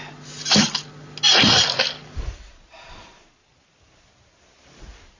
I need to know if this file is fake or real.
real